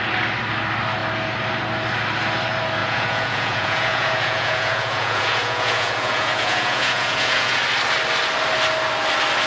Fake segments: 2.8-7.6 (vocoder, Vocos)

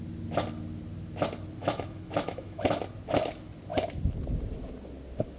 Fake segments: 1.6-2.8 (autoencoder, DAC-VAE)

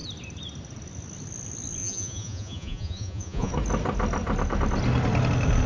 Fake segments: 1.8-3.5 (vocoder, Vocos)

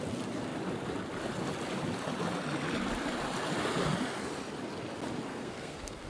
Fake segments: 5.3-6.1 (codec, SNAC)

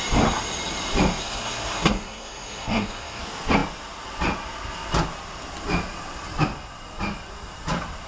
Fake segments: 1.2-3.2 (codec, SNAC)

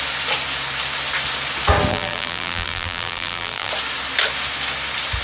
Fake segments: 1.9-3.7 (vocoder, BigVGAN v2)

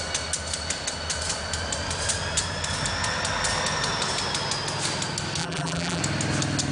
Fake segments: 5.4-6.0 (vocoder, BigVGAN v2)

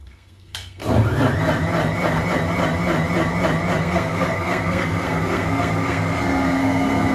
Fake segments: 0.0-0.8 (codec, SNAC); 3.8-7.1